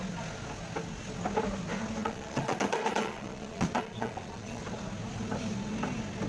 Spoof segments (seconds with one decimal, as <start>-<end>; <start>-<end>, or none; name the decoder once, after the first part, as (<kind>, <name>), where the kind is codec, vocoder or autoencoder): 2.0-4.6 (vocoder, Vocos)